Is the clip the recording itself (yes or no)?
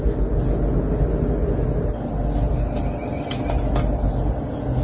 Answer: yes